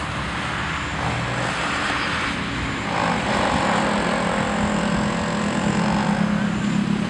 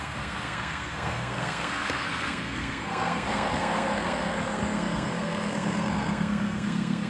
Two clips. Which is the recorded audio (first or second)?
first